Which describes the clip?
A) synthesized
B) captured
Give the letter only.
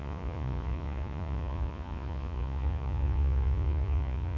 A